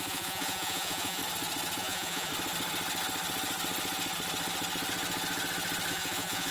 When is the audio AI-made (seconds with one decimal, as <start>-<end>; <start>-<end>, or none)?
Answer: 0.0-1.2; 1.8-2.3; 5.9-6.5